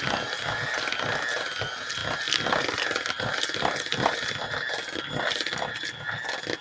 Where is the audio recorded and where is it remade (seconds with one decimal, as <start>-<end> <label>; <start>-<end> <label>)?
0.0-6.6 recorded